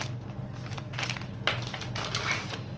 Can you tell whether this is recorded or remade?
recorded